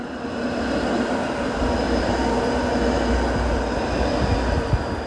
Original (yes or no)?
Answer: yes